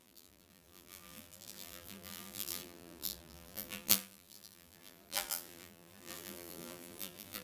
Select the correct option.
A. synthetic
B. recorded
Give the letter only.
A